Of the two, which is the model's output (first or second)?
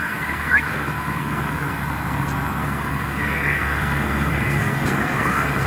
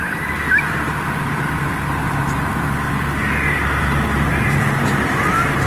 first